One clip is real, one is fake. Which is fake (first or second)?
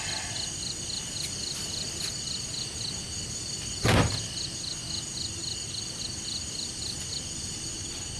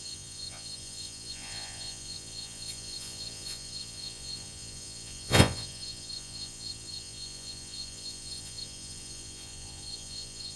second